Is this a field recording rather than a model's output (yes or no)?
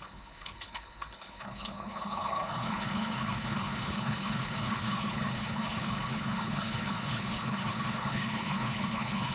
no